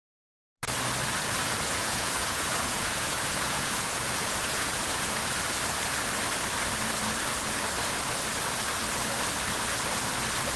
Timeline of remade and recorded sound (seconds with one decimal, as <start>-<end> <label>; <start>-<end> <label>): 0.0-1.4 recorded; 1.4-5.4 remade; 5.4-10.6 recorded